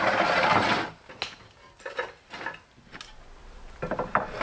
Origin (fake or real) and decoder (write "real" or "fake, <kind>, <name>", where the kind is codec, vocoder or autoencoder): real